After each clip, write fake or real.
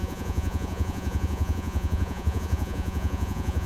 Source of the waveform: fake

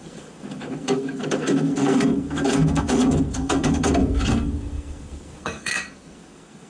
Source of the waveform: fake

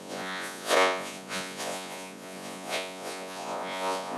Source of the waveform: fake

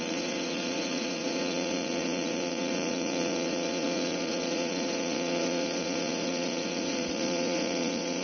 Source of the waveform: fake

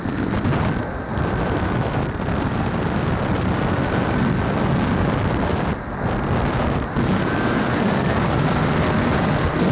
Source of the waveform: real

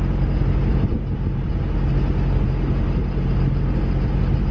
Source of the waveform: real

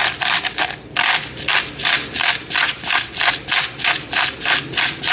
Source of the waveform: real